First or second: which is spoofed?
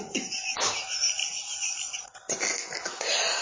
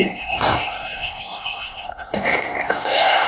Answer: second